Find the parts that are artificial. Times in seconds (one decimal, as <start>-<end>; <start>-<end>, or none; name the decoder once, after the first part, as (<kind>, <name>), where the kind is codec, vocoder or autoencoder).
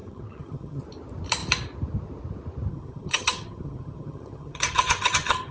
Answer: 0.0-0.8 (vocoder, HiFi-GAN); 2.7-5.5